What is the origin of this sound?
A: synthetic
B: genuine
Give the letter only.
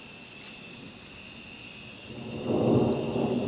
B